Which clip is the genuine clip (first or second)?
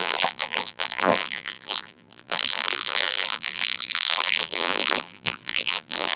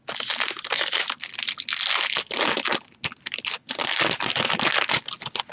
second